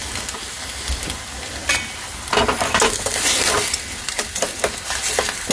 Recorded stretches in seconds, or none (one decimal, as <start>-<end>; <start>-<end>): 0.0-5.5